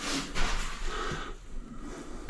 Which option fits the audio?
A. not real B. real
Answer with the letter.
B